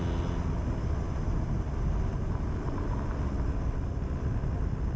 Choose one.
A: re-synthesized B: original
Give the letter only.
B